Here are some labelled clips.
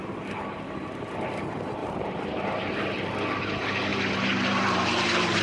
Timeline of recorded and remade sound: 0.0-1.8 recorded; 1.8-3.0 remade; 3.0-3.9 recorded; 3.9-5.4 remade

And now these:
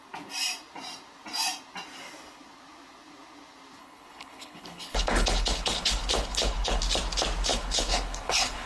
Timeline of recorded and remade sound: 0.0-3.8 recorded; 3.8-6.8 remade; 6.8-7.5 recorded; 7.5-8.7 remade